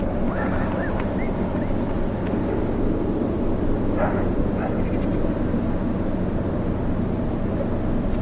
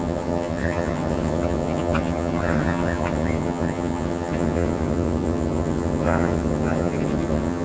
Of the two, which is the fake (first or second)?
second